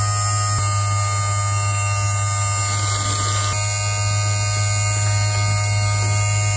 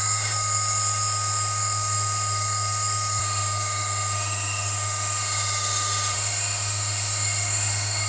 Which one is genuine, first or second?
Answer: first